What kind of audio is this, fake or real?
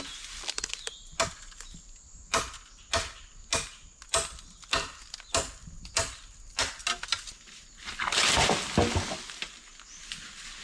real